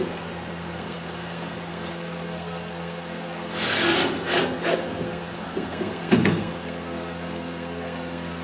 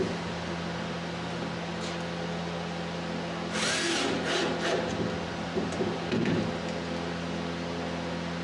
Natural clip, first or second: second